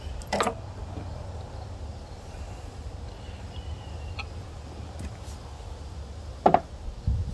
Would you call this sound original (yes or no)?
yes